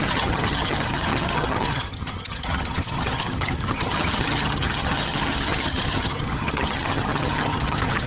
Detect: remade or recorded remade